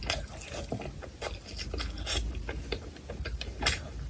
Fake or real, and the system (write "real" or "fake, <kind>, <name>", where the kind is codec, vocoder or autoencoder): real